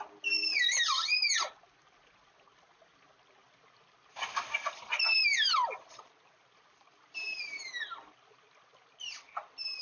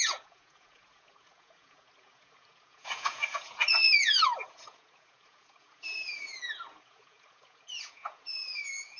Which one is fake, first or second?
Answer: second